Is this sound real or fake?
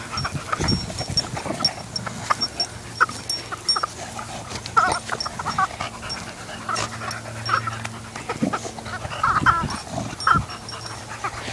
real